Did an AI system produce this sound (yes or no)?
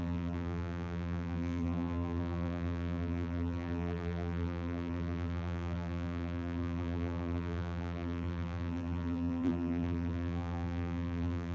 yes